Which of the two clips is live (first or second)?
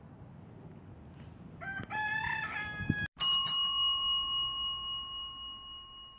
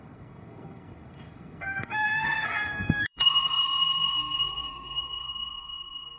first